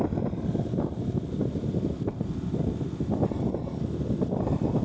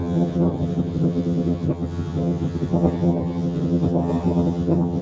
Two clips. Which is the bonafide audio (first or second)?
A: first